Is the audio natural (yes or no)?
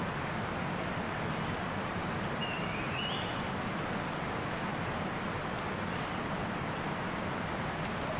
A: yes